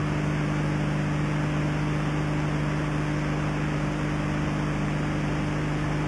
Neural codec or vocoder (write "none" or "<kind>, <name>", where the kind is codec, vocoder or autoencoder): none